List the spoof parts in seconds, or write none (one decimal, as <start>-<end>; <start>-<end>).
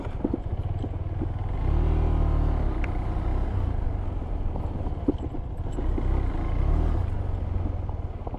none